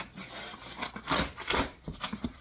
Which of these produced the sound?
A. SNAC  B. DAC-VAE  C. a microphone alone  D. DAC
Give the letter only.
C